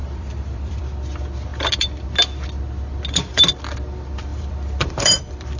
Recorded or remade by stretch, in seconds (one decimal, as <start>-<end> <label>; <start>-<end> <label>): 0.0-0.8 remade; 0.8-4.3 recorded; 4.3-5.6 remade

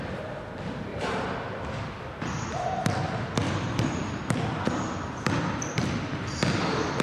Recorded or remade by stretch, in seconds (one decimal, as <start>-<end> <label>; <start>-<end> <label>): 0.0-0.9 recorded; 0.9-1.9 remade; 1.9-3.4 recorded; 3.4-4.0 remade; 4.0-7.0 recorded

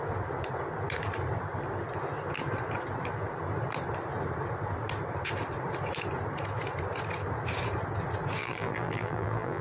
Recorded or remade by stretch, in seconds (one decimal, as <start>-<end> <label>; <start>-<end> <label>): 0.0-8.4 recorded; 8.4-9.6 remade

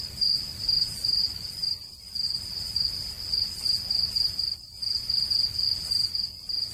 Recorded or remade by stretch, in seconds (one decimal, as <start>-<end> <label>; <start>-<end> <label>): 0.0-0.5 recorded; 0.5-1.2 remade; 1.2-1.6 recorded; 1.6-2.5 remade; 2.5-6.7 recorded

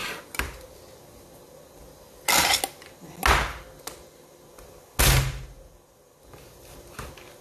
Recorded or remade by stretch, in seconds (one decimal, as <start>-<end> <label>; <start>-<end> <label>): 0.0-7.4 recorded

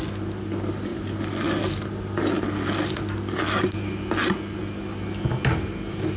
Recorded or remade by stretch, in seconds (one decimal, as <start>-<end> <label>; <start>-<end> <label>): 0.0-6.2 recorded

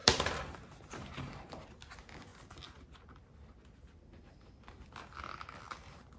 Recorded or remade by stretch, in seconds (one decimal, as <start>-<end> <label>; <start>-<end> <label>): 0.0-1.5 remade; 1.5-6.2 recorded